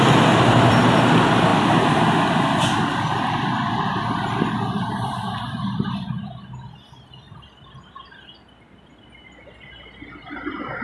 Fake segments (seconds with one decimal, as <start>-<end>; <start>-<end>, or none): none